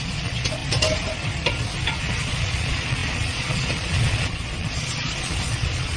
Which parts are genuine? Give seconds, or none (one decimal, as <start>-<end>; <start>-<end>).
0.6-2.0